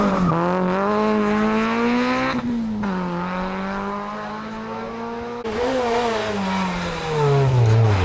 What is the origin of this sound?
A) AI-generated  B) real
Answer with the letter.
B